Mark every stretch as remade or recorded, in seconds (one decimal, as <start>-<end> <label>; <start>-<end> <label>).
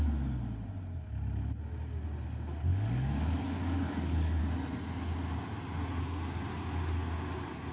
0.0-2.7 recorded; 2.7-4.4 remade; 4.4-7.7 recorded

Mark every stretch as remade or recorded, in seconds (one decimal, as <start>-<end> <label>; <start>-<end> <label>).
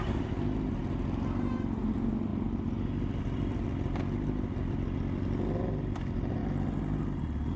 0.0-7.6 recorded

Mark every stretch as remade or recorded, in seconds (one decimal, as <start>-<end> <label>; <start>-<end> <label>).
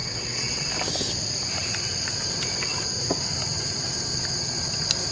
0.0-0.7 remade; 0.7-5.1 recorded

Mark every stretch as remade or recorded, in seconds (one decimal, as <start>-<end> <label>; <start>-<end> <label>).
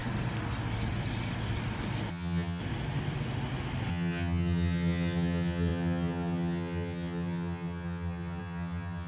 0.0-2.1 recorded; 2.1-2.6 remade; 2.6-3.9 recorded; 3.9-9.1 remade